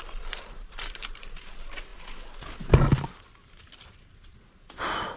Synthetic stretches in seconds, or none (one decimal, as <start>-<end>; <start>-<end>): none

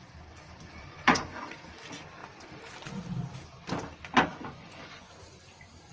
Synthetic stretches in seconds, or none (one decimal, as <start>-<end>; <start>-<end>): 0.8-1.6; 4.3-5.1

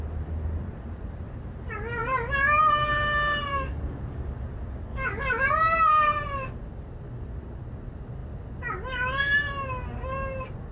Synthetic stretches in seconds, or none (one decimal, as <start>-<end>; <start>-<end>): 3.5-4.2; 4.9-5.5

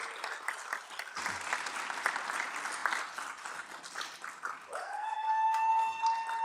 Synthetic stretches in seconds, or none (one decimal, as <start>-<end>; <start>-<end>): 4.8-6.0